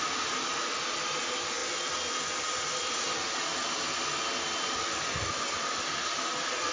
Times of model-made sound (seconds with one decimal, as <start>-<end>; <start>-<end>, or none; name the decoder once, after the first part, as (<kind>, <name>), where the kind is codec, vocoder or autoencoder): none